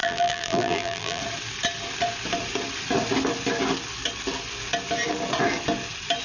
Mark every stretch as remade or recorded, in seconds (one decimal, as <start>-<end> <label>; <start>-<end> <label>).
0.0-1.2 remade; 1.2-6.2 recorded